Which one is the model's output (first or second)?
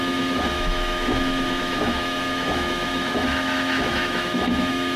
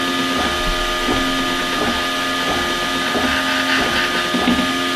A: first